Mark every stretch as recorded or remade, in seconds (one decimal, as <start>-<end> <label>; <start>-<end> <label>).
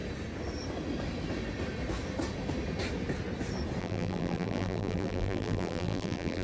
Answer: 0.0-3.8 recorded; 3.8-6.4 remade